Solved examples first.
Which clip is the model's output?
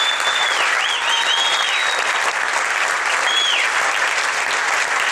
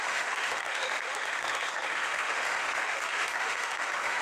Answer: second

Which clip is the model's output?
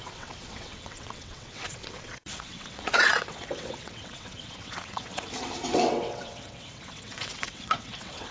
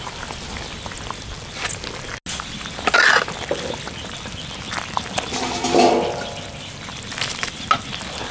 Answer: first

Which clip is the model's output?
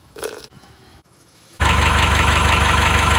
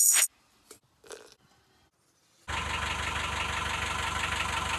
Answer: first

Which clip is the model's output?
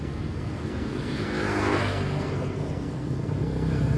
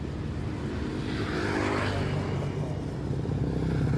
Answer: first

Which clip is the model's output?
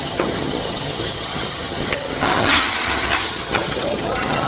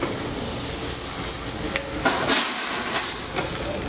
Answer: first